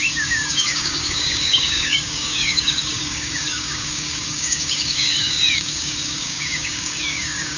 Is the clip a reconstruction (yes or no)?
yes